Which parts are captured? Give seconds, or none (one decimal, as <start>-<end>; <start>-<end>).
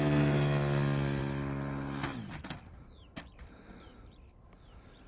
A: 0.0-5.1